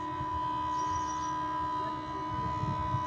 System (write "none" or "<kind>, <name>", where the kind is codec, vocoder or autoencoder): none